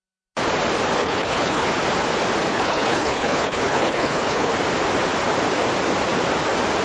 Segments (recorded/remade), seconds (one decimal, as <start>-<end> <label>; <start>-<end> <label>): 0.0-1.0 recorded; 1.0-1.7 remade; 1.7-2.5 recorded; 2.5-4.5 remade; 4.5-6.8 recorded